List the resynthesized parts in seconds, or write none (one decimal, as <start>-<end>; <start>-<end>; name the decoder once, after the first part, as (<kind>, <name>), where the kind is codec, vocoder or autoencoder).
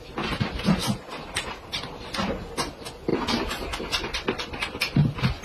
none